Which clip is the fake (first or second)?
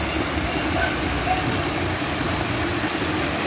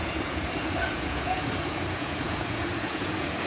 second